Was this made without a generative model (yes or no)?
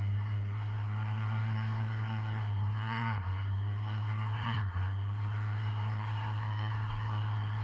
no